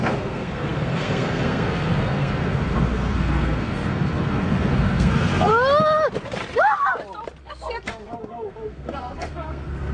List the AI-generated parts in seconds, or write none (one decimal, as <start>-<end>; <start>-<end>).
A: 0.0-5.5; 7.4-9.9